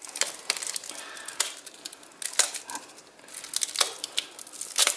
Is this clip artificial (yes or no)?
no